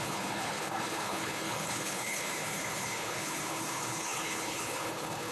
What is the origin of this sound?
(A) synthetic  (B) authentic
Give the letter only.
A